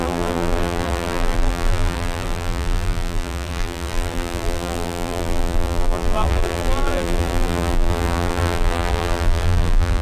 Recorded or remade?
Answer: remade